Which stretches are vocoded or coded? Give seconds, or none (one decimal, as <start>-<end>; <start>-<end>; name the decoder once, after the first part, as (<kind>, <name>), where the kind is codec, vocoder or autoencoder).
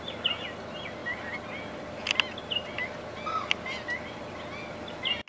none